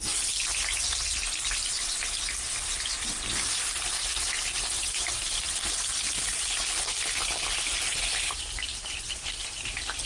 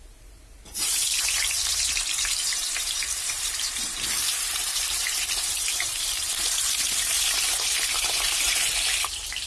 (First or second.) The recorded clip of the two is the first